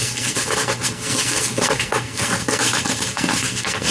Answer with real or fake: fake